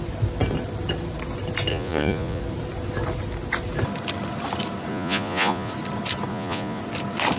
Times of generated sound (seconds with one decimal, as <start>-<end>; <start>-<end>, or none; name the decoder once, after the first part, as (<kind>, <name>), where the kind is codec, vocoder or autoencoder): 1.7-2.4 (vocoder, Vocos); 4.9-5.7; 6.3-6.8